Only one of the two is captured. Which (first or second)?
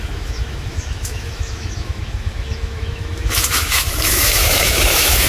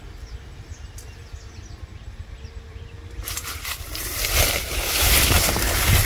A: second